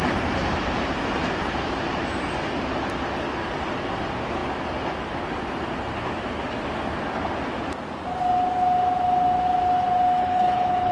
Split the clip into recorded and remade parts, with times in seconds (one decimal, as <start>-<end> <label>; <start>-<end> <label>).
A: 0.0-10.2 recorded; 10.2-10.9 remade